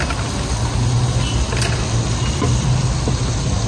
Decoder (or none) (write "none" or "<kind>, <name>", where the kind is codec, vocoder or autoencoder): none